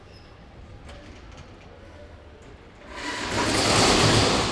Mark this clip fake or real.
real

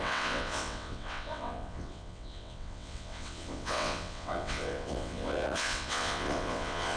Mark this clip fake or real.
fake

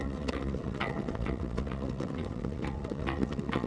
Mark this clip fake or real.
fake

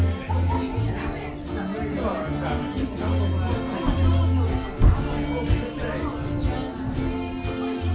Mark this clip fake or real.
real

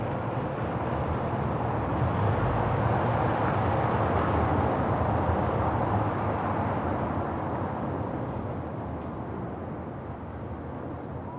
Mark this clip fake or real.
real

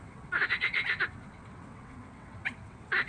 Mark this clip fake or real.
fake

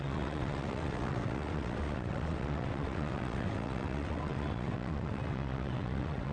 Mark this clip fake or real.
fake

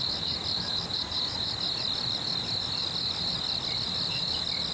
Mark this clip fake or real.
real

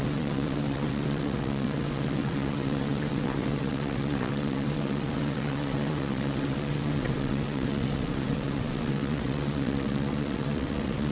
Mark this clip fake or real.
fake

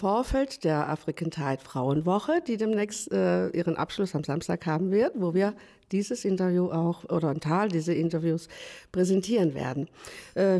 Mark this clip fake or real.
real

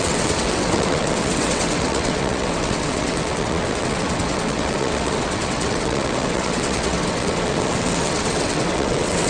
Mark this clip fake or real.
fake